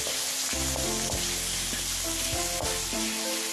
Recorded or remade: recorded